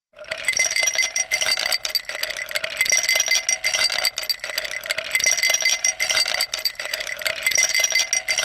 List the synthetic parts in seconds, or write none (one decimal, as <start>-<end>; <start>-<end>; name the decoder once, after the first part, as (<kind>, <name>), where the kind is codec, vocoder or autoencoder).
0.0-1.9 (vocoder, BigVGAN v2); 5.7-7.8